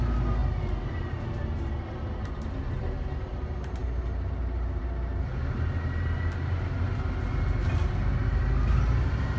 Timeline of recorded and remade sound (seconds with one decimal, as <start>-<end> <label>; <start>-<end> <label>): 0.0-9.4 recorded